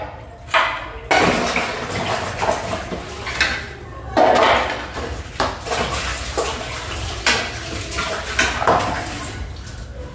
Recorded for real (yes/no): yes